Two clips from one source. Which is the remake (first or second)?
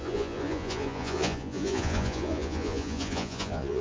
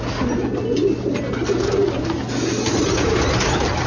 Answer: first